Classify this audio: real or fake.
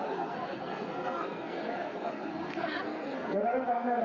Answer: fake